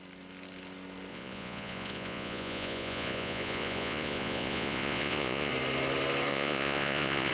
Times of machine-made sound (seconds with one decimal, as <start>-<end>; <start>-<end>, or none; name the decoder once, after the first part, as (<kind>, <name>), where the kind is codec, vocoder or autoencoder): 1.1-5.5 (vocoder, Vocos); 6.3-7.3